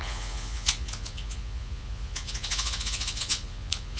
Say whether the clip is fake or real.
fake